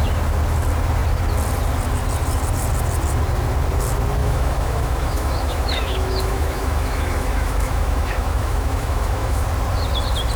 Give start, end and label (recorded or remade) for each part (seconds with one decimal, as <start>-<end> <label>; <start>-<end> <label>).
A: 0.0-4.2 recorded; 4.2-9.4 remade; 9.4-10.4 recorded